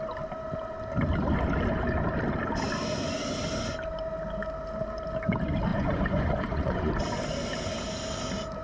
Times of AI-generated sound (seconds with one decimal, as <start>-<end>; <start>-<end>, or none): 5.7-6.9